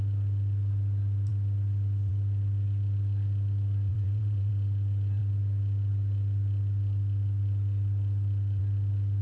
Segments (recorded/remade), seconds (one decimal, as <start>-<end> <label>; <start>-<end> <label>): 0.0-3.9 recorded; 3.9-4.5 remade; 4.5-9.2 recorded